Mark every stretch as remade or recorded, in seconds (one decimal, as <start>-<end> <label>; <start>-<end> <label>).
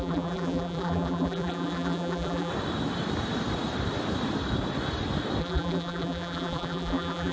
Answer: 0.0-2.5 remade; 2.5-5.4 recorded; 5.4-7.3 remade